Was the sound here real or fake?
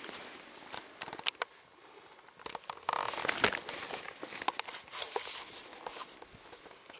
real